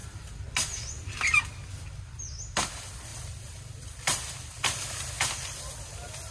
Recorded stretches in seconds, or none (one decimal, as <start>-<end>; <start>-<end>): 1.4-3.1; 4.5-6.3